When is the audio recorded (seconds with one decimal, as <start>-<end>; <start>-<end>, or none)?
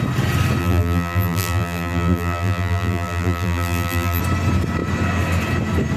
0.0-0.6; 4.2-6.0